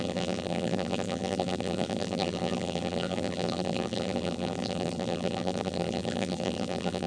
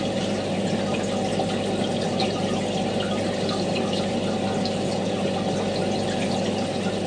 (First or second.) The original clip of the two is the second